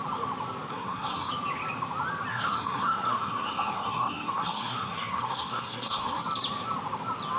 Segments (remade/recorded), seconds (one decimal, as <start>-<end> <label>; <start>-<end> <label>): 0.0-0.7 recorded; 0.7-1.3 remade; 1.3-2.3 recorded; 2.3-6.2 remade; 6.2-7.4 recorded